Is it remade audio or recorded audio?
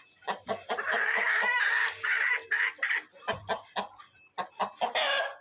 recorded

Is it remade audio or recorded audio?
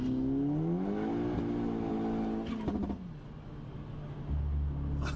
recorded